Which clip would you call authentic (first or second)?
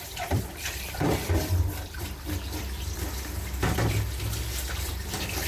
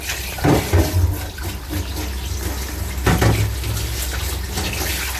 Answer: second